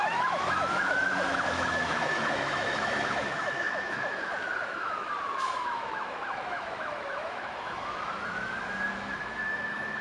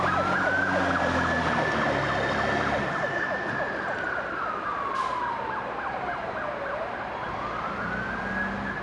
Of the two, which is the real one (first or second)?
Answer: second